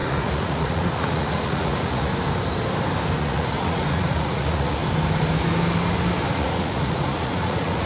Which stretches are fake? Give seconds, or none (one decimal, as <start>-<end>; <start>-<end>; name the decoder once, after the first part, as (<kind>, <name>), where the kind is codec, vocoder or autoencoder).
0.0-2.1 (vocoder, Vocos); 3.2-4.8; 6.3-7.9